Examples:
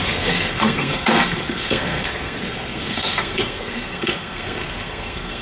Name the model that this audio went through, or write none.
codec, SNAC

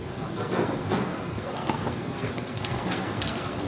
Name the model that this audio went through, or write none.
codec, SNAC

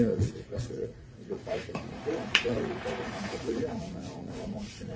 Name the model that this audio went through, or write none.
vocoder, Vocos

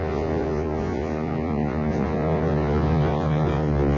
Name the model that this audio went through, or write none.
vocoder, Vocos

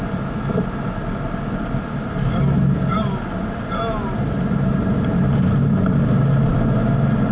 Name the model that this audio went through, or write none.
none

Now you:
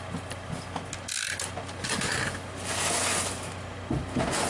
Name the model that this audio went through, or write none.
none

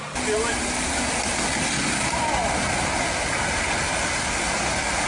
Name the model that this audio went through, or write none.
none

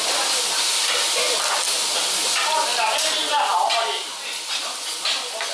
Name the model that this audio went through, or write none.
none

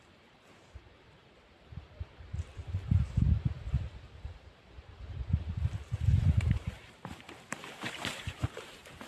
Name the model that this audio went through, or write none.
vocoder, BigVGAN v2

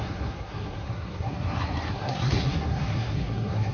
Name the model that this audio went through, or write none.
codec, SNAC